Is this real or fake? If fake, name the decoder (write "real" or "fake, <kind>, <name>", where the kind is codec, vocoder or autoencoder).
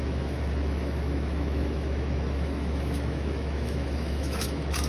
fake, autoencoder, DAC-VAE